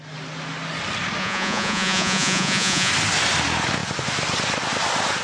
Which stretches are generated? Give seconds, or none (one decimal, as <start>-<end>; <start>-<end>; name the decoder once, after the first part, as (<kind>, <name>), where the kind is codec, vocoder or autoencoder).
1.2-2.9 (vocoder, Vocos)